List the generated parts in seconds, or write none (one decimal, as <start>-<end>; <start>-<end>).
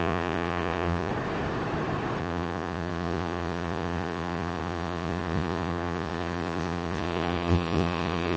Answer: 0.0-1.1; 2.2-8.4